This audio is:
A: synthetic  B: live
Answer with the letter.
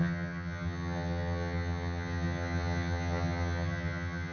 A